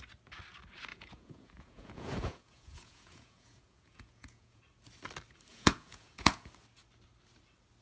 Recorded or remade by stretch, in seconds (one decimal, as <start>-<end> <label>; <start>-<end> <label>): 0.0-0.9 recorded; 0.9-4.6 remade; 4.6-5.5 recorded; 5.5-6.5 remade; 6.5-7.8 recorded